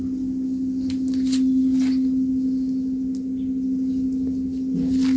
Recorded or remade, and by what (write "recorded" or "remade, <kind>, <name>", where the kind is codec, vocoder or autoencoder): recorded